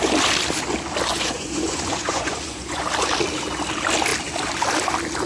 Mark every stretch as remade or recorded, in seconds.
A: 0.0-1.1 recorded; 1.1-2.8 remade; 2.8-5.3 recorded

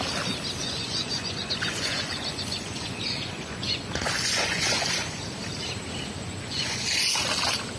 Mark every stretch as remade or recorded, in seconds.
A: 0.0-0.6 recorded; 0.6-5.2 remade; 5.2-6.2 recorded; 6.2-7.2 remade; 7.2-7.8 recorded

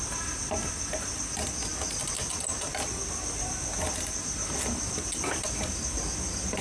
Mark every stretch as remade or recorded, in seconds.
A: 0.0-6.6 recorded

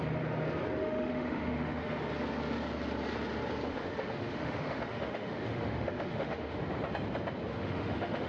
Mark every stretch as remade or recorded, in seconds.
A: 0.0-0.8 recorded; 0.8-1.9 remade; 1.9-3.7 recorded; 3.7-6.6 remade; 6.6-7.5 recorded; 7.5-8.3 remade